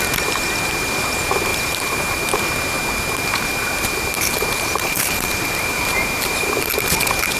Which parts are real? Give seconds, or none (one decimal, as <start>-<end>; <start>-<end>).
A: 0.0-1.5; 2.4-3.3; 6.7-7.4